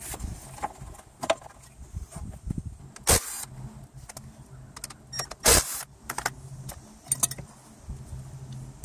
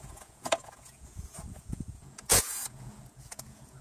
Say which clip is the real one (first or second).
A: first